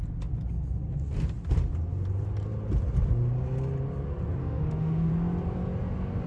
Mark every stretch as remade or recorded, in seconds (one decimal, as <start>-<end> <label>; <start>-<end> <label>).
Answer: 0.0-4.4 recorded; 4.4-5.1 remade; 5.1-6.3 recorded